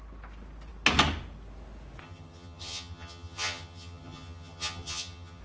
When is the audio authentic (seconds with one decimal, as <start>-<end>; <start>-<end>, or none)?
0.0-2.0